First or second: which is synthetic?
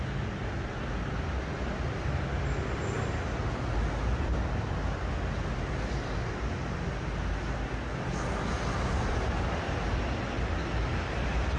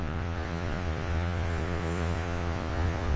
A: second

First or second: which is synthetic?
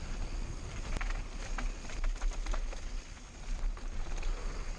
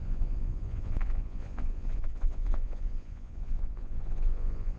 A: second